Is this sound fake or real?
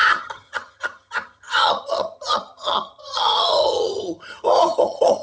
fake